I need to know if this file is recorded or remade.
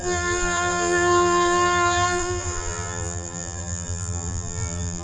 remade